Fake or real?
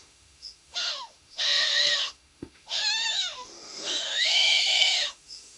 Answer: fake